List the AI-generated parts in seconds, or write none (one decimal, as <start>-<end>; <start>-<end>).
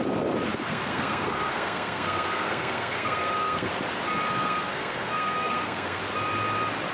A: 0.7-3.7; 4.4-6.0